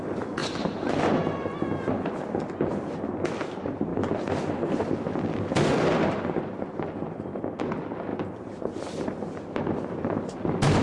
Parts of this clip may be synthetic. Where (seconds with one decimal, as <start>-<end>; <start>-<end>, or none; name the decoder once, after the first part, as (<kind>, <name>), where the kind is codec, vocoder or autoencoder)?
0.0-0.4 (vocoder, BigVGAN v2); 1.3-10.8